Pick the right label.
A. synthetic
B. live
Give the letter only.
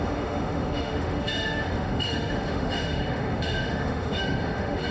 A